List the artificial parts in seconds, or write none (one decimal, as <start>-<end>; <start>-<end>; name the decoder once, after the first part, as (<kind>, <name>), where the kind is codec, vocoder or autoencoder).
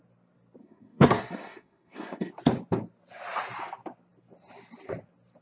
0.6-2.3 (codec, SNAC)